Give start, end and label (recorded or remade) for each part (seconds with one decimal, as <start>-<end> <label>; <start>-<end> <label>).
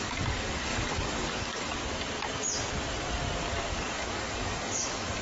0.0-1.8 remade; 1.8-3.4 recorded; 3.4-5.2 remade